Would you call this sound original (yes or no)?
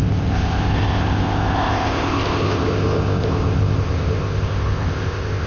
no